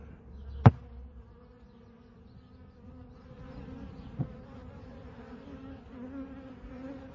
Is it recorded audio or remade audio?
recorded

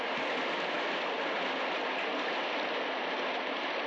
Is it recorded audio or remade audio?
recorded